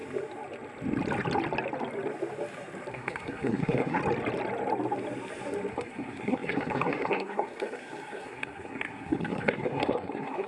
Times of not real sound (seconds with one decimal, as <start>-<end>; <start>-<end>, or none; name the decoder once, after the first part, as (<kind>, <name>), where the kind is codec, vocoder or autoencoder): 2.9-4.0 (codec, SNAC); 5.7-10.5